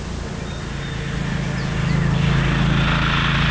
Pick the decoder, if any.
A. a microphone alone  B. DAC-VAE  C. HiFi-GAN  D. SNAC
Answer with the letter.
A